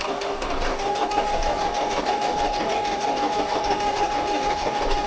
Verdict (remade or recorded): remade